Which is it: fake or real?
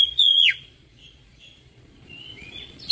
fake